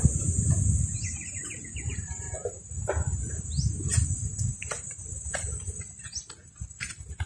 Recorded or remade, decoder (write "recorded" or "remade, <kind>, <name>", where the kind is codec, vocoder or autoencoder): recorded